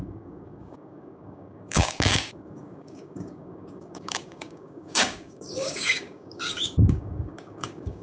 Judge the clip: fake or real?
fake